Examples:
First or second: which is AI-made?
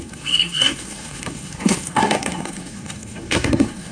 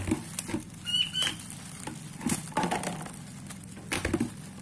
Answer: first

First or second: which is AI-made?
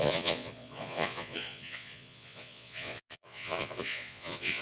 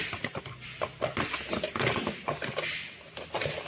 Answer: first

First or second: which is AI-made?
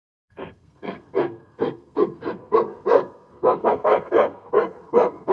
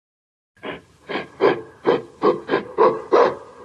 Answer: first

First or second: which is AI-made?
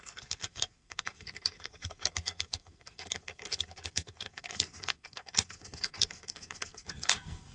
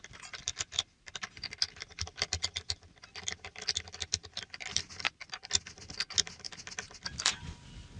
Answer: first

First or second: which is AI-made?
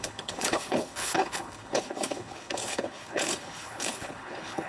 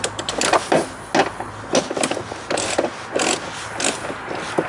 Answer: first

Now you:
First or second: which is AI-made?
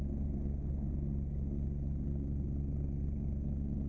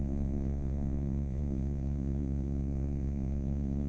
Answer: second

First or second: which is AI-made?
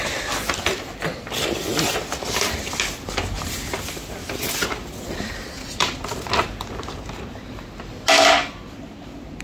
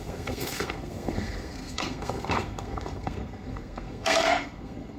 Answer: second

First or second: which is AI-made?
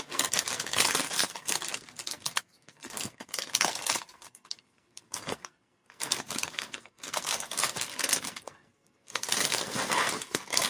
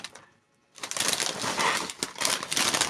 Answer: first